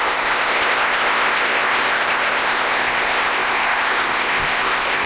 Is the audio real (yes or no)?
no